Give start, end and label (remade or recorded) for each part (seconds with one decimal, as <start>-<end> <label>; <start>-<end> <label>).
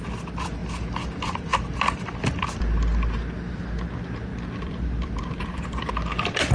0.0-4.3 recorded; 4.3-5.9 remade; 5.9-6.5 recorded